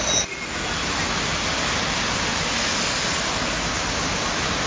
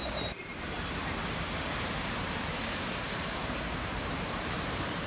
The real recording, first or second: first